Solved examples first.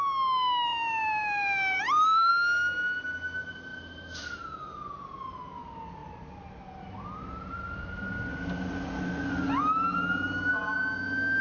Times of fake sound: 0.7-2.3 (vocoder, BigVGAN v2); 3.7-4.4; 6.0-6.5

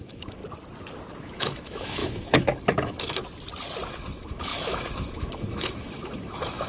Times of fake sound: 0.0-0.4 (autoencoder, DAC-VAE); 1.2-3.2; 3.9-6.7

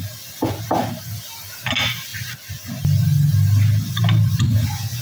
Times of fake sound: none

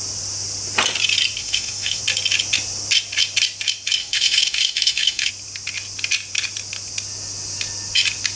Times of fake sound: 1.4-2.0 (autoencoder, DAC-VAE); 4.0-5.3

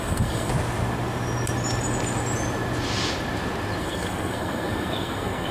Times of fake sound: 0.0-0.5 (codec, SNAC); 3.8-5.5

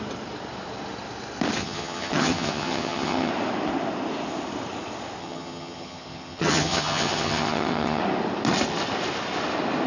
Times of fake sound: 1.6-3.3 (vocoder, HiFi-GAN); 5.2-8.0

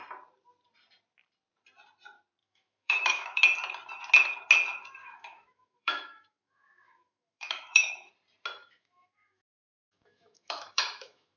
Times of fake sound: 2.4-3.4 (autoencoder, DAC-VAE); 5.0-8.1; 8.6-11.4

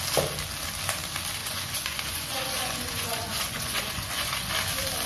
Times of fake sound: 1.4-4.5 (vocoder, Vocos)